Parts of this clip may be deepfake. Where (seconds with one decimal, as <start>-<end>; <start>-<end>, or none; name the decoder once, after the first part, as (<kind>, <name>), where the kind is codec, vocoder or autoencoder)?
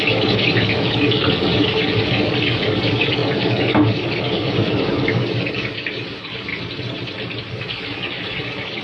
0.0-6.5 (codec, DAC); 7.5-8.8